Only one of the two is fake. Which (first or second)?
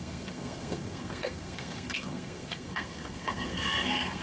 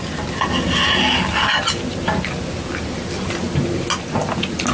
first